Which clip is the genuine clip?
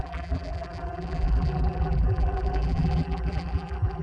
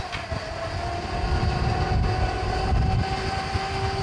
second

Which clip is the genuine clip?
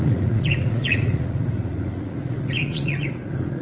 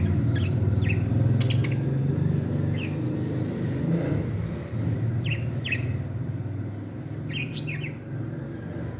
second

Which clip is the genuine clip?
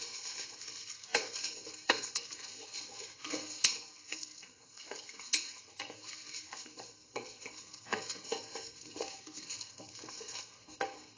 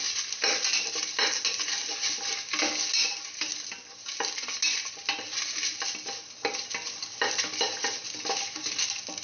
second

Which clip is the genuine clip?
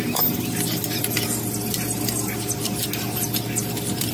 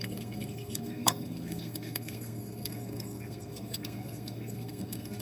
first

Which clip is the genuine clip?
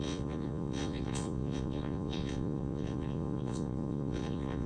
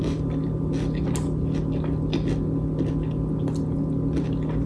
second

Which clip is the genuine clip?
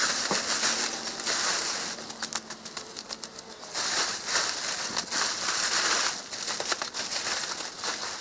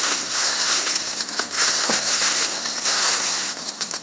first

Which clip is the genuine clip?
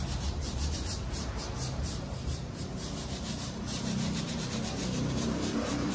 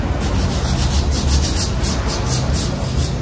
second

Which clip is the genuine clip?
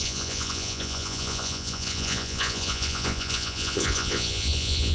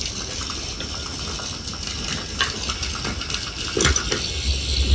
second